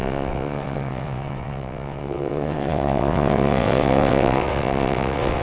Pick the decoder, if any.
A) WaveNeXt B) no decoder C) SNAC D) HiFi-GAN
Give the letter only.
A